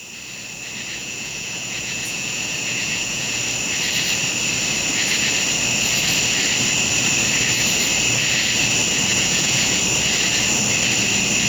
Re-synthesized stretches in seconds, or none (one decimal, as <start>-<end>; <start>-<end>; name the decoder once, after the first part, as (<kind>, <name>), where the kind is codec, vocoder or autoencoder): 1.0-3.4 (vocoder, Vocos); 9.1-9.8